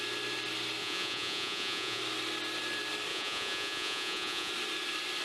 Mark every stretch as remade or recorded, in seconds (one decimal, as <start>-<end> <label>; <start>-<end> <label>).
0.0-0.8 recorded; 0.8-2.0 remade; 2.0-3.1 recorded; 3.1-4.5 remade; 4.5-5.2 recorded

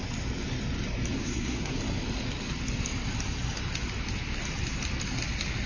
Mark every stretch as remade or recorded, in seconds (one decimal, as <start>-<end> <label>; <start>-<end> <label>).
0.0-1.2 recorded; 1.2-1.8 remade; 1.8-5.7 recorded

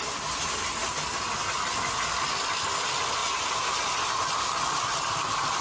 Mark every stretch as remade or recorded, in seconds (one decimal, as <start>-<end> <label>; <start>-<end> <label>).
0.0-3.2 recorded; 3.2-3.7 remade; 3.7-5.6 recorded

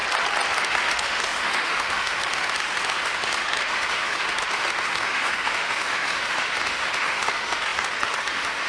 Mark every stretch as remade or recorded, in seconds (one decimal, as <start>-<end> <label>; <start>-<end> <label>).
0.0-0.6 recorded; 0.6-8.7 remade

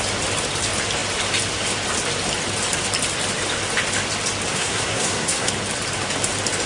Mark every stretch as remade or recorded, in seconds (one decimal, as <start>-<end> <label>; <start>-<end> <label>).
0.0-4.5 recorded; 4.5-5.5 remade; 5.5-6.7 recorded